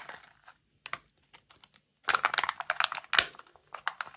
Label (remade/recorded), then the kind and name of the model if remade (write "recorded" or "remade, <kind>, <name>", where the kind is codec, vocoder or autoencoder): recorded